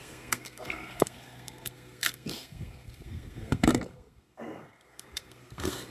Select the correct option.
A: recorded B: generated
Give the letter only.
B